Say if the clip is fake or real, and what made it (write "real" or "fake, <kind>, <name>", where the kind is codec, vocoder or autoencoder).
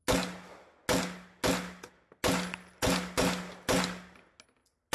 real